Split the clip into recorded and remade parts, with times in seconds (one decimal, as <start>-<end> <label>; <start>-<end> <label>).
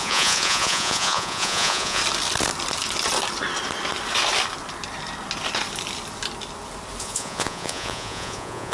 0.0-2.0 remade; 2.0-7.0 recorded; 7.0-8.7 remade